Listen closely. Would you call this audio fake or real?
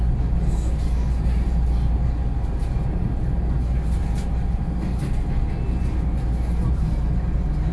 real